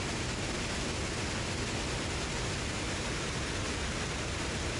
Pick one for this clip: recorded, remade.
recorded